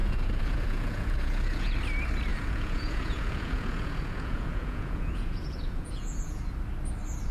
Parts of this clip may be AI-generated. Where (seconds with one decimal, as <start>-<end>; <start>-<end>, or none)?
0.0-1.8; 2.3-6.5